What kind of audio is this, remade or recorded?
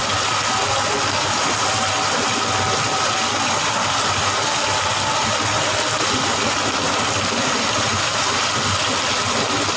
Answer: recorded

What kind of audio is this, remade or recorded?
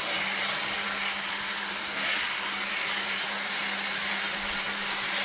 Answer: recorded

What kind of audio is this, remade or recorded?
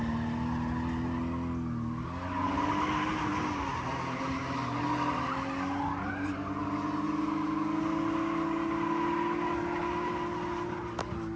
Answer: recorded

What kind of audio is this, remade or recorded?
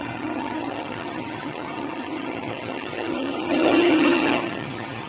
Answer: remade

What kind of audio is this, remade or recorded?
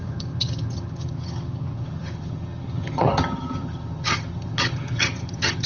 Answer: remade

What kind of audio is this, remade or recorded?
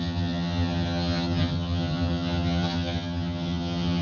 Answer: remade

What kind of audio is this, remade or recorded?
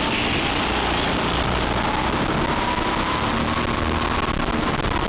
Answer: recorded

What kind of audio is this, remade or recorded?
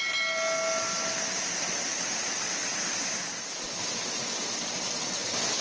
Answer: recorded